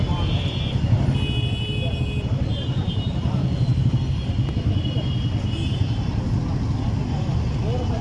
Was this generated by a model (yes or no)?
no